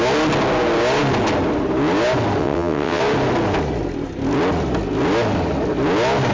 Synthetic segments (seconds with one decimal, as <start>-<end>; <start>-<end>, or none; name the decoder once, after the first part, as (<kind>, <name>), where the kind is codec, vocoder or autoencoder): 2.4-3.0 (vocoder, WaveNeXt)